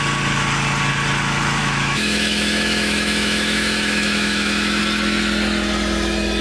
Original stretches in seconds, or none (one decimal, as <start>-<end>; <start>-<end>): 0.0-1.6; 4.8-6.4